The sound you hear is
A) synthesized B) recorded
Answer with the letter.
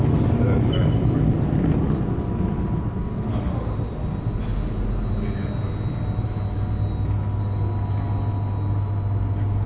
B